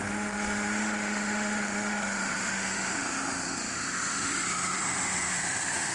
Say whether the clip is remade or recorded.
remade